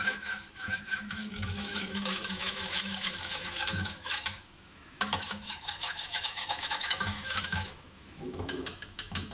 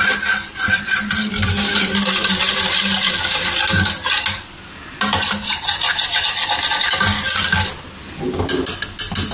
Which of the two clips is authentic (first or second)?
second